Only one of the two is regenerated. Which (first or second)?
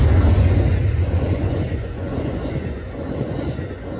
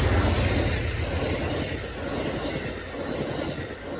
first